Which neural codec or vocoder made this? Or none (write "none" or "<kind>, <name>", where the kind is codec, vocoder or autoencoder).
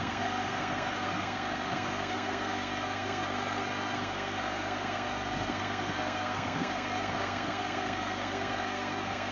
codec, SNAC